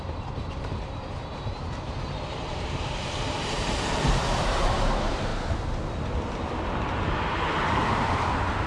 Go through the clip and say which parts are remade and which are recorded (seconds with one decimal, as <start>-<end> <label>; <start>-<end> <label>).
0.0-5.3 remade; 5.3-7.8 recorded; 7.8-8.7 remade